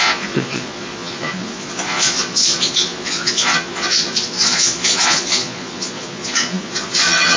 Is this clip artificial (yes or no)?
yes